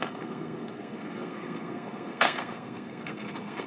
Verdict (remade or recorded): remade